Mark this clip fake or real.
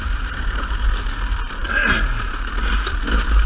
fake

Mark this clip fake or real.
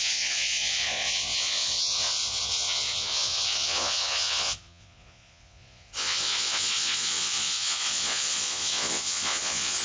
fake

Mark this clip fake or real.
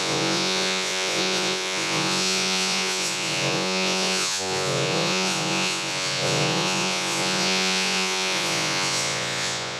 fake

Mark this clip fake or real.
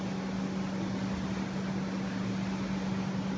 real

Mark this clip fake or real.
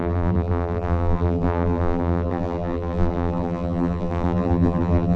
fake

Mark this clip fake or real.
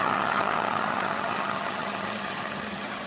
fake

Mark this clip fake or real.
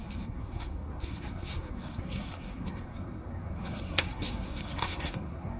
fake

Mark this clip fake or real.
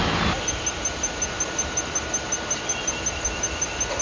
real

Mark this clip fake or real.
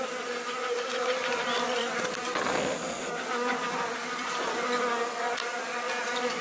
real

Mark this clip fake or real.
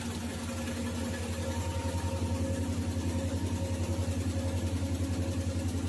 real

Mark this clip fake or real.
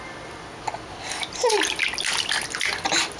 real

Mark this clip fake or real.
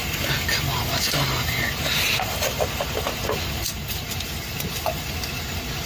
real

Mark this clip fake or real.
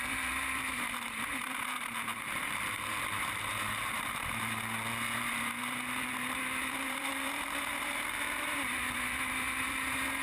fake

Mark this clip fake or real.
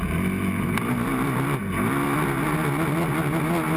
real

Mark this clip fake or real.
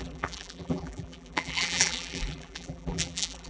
fake